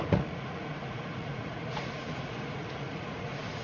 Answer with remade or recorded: remade